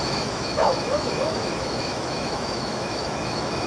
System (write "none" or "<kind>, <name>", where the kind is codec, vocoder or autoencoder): autoencoder, DAC-VAE